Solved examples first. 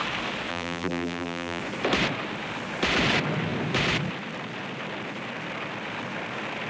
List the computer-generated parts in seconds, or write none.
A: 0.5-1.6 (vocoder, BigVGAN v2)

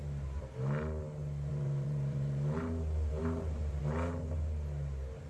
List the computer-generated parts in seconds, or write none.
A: 1.5-3.8 (vocoder, BigVGAN v2)

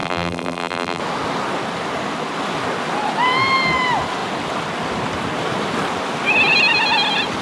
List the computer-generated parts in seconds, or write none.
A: 0.0-1.0 (vocoder, BigVGAN v2)

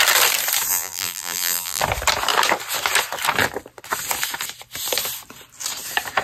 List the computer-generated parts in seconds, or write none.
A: 0.7-1.8 (vocoder, BigVGAN v2)

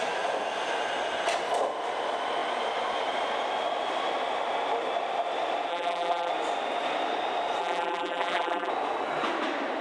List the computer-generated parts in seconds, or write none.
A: 5.7-6.3 (vocoder, BigVGAN v2); 7.6-8.7